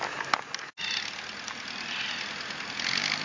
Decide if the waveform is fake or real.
real